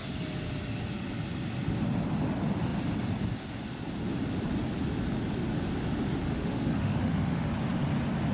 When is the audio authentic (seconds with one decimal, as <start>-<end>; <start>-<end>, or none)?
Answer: 0.0-6.3; 7.5-8.3